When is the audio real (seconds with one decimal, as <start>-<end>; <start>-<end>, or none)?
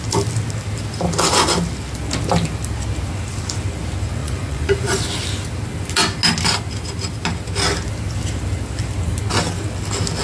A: 0.0-4.2; 5.0-10.2